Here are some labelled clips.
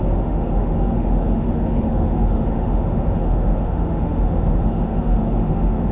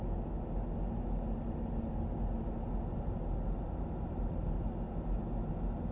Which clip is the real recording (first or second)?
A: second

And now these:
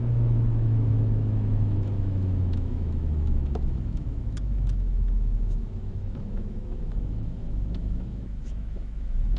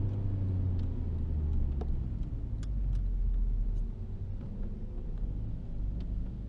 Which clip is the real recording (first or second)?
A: second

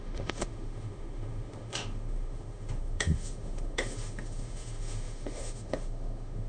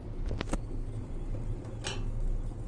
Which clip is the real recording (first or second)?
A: second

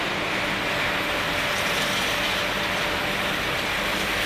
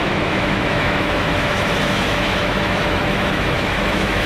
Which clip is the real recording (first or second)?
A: first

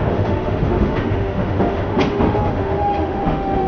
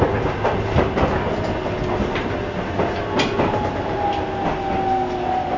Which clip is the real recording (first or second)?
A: second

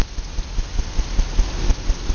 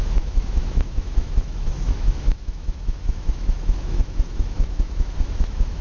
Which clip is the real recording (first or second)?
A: first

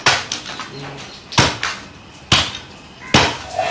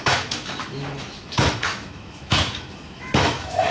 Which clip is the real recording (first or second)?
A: first